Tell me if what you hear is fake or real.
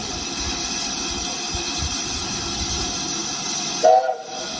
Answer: real